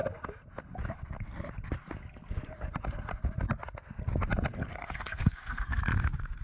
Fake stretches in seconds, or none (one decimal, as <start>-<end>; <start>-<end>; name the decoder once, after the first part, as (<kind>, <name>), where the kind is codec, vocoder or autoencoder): 4.7-5.8 (codec, SNAC)